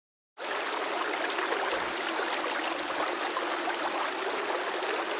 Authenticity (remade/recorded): recorded